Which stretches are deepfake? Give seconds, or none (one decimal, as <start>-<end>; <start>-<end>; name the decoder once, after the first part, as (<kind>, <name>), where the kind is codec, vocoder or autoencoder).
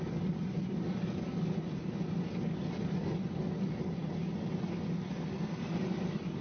none